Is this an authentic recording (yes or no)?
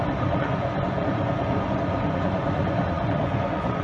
no